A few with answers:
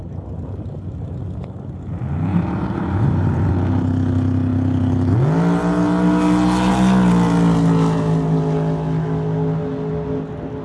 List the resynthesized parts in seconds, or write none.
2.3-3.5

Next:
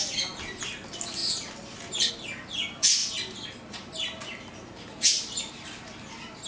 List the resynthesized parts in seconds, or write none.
1.2-2.1